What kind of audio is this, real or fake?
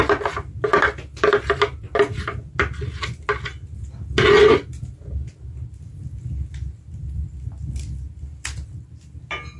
real